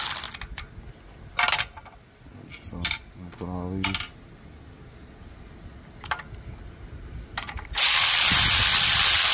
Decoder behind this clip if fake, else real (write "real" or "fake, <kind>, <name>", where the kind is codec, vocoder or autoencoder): real